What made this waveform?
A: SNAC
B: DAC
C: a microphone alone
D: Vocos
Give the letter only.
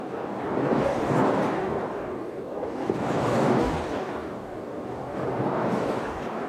B